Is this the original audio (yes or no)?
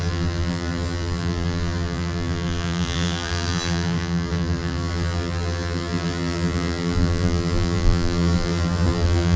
no